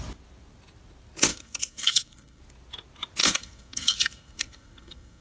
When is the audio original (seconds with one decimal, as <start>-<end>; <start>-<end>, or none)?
0.0-1.3; 2.4-3.2